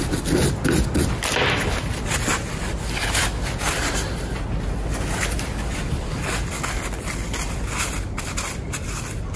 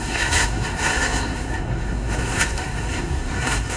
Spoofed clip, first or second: second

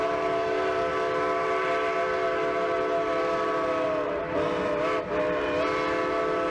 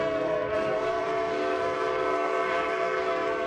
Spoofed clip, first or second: second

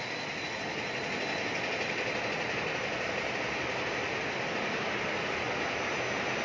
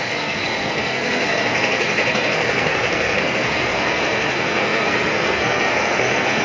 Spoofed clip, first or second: second